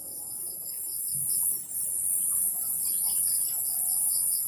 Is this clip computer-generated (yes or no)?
no